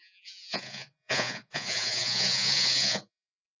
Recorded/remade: remade